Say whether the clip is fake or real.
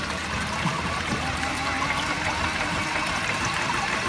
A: fake